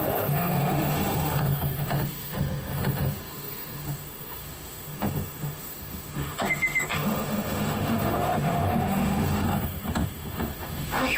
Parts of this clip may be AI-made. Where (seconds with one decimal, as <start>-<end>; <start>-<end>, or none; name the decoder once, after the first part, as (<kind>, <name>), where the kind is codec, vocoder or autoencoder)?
0.0-11.2 (autoencoder, DAC-VAE)